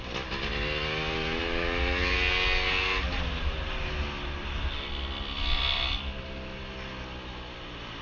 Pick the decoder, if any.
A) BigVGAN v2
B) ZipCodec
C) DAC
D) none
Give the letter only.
D